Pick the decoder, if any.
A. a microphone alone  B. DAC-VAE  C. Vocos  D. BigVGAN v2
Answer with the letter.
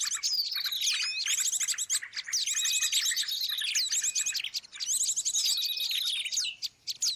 A